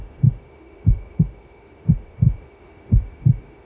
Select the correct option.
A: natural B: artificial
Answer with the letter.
B